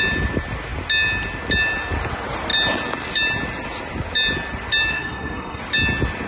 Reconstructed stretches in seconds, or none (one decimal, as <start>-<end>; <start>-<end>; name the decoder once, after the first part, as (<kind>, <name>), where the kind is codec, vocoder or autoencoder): 4.9-5.6 (codec, SNAC)